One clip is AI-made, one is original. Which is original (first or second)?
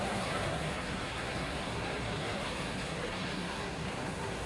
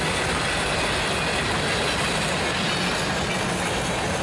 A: second